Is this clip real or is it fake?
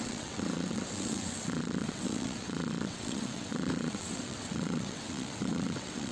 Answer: fake